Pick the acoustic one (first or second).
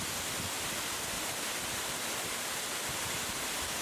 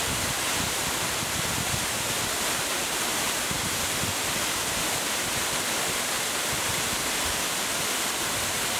first